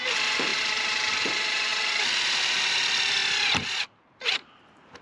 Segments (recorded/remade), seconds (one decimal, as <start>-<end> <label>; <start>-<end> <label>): 0.0-3.2 remade; 3.2-4.2 recorded; 4.2-5.0 remade